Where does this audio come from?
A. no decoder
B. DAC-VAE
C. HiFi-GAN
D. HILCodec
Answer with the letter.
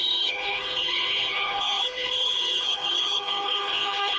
D